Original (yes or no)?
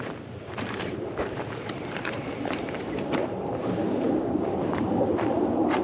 no